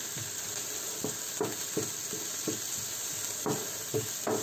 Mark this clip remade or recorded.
recorded